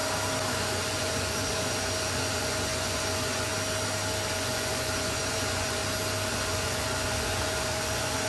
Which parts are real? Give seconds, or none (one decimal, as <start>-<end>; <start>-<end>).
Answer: 0.0-0.5; 3.5-4.3; 5.8-6.3